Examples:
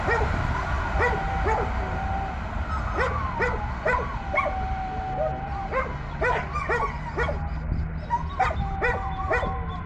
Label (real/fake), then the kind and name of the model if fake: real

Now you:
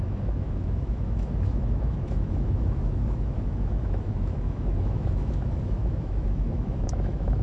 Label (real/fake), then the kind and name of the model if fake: fake, autoencoder, DAC-VAE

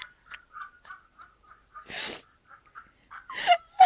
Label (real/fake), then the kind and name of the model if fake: real